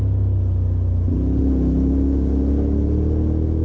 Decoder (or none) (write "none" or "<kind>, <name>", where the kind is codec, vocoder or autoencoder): none